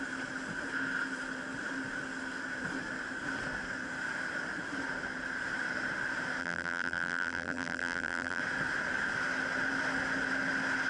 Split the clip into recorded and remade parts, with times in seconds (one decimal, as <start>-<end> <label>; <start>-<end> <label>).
0.0-6.4 recorded; 6.4-8.4 remade; 8.4-10.9 recorded